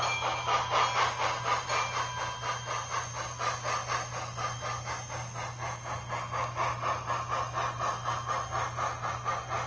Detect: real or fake real